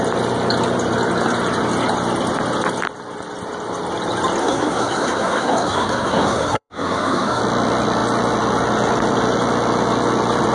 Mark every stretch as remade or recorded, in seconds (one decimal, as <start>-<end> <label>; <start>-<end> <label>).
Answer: 0.0-4.4 recorded; 4.4-7.4 remade; 7.4-10.5 recorded